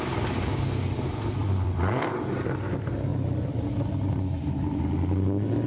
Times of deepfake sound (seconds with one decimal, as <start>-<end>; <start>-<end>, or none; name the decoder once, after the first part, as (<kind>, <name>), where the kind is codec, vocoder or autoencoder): 1.4-2.4 (vocoder, BigVGAN v2); 3.1-4.8